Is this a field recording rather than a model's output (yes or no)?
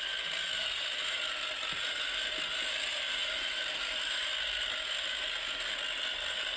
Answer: yes